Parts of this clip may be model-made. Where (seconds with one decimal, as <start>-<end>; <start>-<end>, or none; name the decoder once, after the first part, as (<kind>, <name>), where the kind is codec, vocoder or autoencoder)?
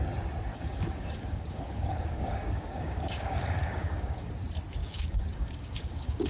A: 0.5-4.3 (codec, DAC); 4.8-6.3